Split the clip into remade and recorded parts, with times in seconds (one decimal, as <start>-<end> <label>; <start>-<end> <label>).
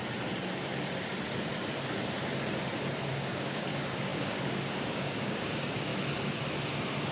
0.0-3.1 recorded; 3.1-5.9 remade; 5.9-7.1 recorded